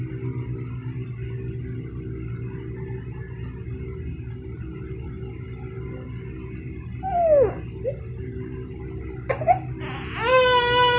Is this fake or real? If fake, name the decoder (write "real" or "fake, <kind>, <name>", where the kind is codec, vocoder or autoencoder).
real